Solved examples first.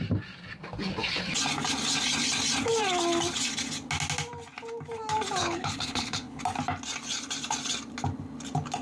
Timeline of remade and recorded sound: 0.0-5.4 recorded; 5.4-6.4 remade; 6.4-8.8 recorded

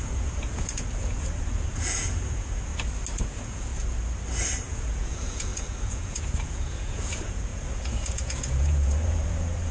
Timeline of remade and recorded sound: 0.0-2.7 remade; 2.7-3.2 recorded; 3.2-3.7 remade; 3.7-4.7 recorded; 4.7-9.7 remade

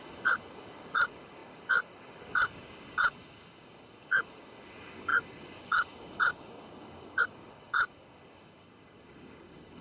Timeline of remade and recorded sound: 0.0-9.8 remade

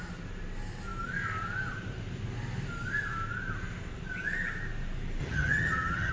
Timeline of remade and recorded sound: 0.0-5.2 recorded; 5.2-6.1 remade

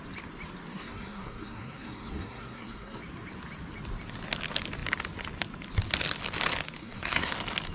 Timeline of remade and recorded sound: 0.0-0.7 recorded; 0.7-3.0 remade; 3.0-6.8 recorded; 6.8-7.3 remade; 7.3-7.7 recorded

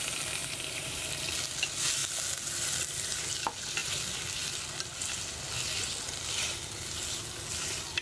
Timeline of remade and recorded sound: 0.0-0.4 recorded; 0.4-1.1 remade; 1.1-8.0 recorded

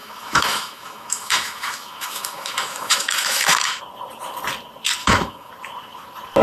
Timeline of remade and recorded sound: 0.0-3.8 remade; 3.8-5.0 recorded; 5.0-5.5 remade; 5.5-6.4 recorded